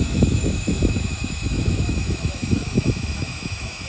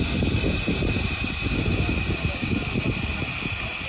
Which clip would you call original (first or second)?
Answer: second